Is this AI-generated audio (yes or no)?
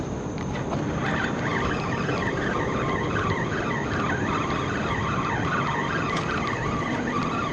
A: no